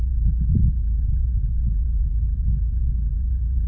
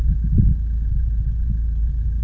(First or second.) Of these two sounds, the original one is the second